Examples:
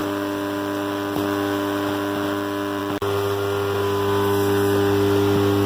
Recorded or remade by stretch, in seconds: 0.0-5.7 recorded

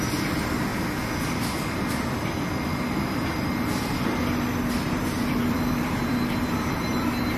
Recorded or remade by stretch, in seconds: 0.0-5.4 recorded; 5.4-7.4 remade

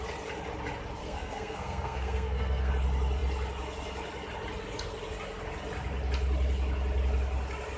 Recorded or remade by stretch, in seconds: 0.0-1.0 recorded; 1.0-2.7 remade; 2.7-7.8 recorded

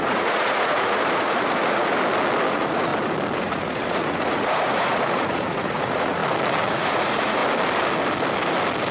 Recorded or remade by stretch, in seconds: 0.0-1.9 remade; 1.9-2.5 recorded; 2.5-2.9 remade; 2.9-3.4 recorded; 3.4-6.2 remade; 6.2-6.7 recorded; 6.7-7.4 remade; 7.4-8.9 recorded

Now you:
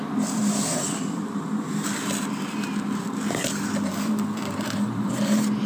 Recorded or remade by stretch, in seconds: 0.0-5.7 remade